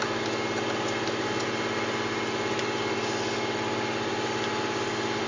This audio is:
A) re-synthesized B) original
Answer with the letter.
B